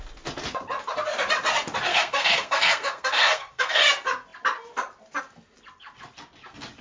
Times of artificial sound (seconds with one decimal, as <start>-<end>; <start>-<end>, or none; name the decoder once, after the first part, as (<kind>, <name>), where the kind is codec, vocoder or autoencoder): 1.9-3.8 (codec, SNAC)